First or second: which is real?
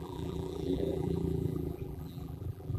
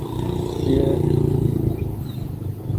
second